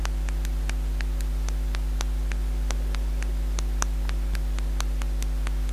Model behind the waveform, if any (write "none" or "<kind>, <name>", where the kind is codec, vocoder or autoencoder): none